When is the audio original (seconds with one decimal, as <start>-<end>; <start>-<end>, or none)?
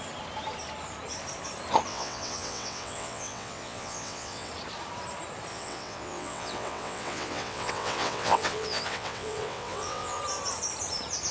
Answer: 0.0-1.9; 4.5-5.5; 10.2-11.3